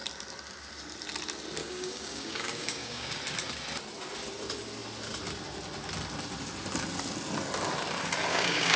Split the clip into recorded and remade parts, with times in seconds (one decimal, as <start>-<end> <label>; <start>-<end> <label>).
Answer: 0.0-1.6 recorded; 1.6-3.2 remade; 3.2-8.3 recorded; 8.3-8.8 remade